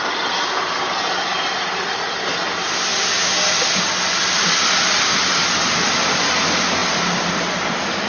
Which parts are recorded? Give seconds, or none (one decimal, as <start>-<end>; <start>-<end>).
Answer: 0.0-8.1